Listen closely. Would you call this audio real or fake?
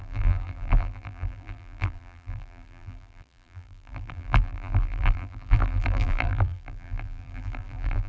fake